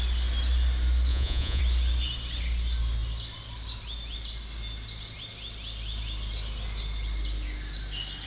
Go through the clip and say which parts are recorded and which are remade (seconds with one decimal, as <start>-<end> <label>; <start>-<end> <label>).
0.0-1.1 recorded; 1.1-1.6 remade; 1.6-8.3 recorded